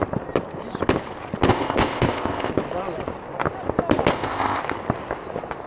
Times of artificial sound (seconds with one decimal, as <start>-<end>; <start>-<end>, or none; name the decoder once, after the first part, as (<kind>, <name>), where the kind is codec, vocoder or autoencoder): 1.5-2.5 (codec, ZipCodec); 4.1-4.6